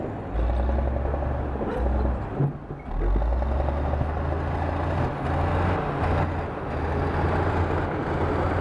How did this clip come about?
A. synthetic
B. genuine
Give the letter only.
B